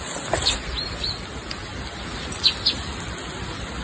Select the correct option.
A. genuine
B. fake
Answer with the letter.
A